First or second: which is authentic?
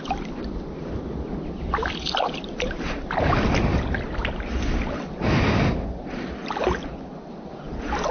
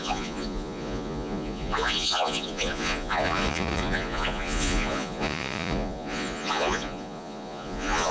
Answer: first